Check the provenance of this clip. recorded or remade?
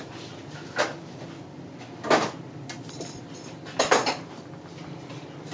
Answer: recorded